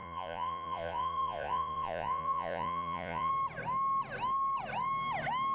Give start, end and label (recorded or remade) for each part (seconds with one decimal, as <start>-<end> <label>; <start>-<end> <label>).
0.0-3.3 remade; 3.3-5.5 recorded